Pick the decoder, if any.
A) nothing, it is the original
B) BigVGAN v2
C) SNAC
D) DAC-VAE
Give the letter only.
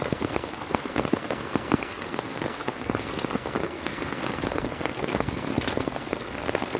C